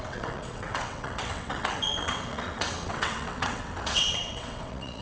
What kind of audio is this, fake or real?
fake